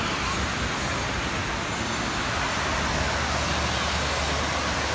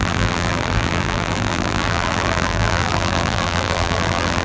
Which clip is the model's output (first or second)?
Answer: second